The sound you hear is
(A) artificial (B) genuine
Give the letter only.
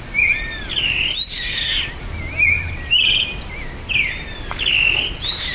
B